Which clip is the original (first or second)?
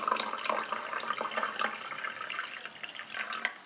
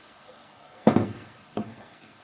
first